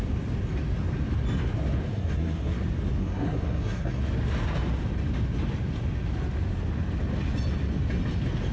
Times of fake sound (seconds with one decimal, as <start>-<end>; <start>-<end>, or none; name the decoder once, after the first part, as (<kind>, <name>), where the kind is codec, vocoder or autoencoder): 1.9-2.6 (codec, SNAC); 3.0-4.0